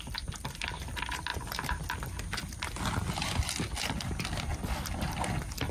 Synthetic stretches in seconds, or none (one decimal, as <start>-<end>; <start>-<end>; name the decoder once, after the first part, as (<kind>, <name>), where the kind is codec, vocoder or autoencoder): 1.3-1.9 (vocoder, BigVGAN v2)